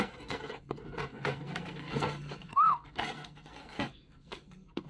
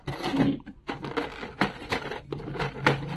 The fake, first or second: first